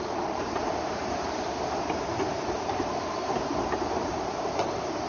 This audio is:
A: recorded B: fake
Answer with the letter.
B